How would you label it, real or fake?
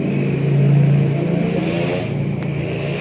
real